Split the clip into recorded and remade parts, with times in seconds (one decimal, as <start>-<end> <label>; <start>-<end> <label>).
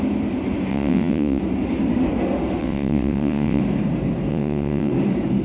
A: 0.0-0.7 recorded; 0.7-1.4 remade; 1.4-2.6 recorded; 2.6-3.6 remade; 3.6-4.3 recorded; 4.3-4.9 remade; 4.9-5.4 recorded